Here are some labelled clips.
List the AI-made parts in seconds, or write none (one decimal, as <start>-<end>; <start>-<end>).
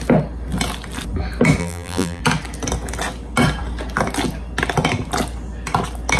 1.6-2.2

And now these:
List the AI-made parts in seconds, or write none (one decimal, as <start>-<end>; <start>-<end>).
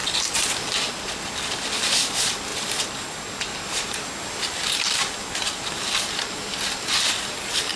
0.0-1.7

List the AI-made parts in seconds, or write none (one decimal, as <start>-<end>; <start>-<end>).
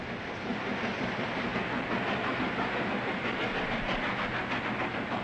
0.0-0.5; 1.1-1.5; 4.6-5.2